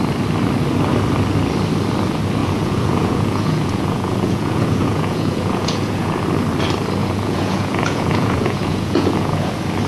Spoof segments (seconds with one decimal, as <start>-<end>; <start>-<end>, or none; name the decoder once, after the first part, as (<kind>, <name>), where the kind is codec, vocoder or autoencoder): 2.4-6.2 (vocoder, Vocos); 7.0-9.5